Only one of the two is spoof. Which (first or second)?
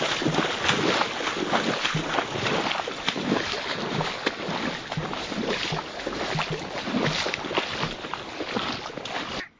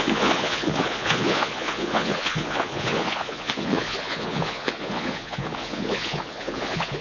second